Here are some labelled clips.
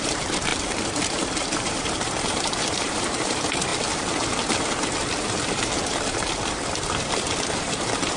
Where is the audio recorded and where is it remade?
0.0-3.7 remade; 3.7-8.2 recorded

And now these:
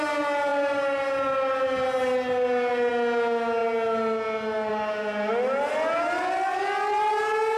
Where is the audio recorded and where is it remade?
0.0-7.6 recorded

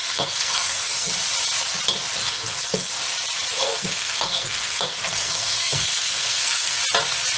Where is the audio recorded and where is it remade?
0.0-1.1 remade; 1.1-2.2 recorded; 2.2-2.9 remade; 2.9-3.6 recorded; 3.6-6.8 remade; 6.8-7.4 recorded

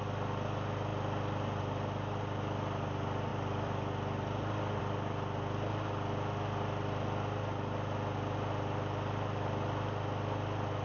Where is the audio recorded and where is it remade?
0.0-3.3 recorded; 3.3-4.8 remade; 4.8-10.8 recorded